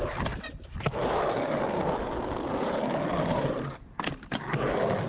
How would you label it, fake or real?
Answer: real